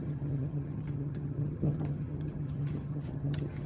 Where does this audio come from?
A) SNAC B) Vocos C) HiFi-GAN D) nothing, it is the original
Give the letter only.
C